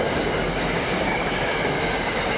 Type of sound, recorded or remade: remade